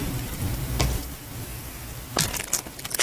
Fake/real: real